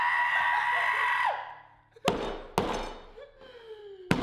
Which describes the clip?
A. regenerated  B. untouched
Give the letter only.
B